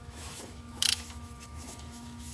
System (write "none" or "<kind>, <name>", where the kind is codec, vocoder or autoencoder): autoencoder, DAC-VAE